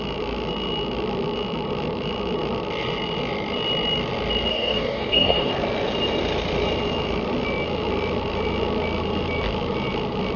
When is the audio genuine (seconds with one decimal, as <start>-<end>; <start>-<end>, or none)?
0.0-4.5; 5.5-10.4